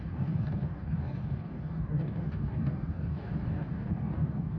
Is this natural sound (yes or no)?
no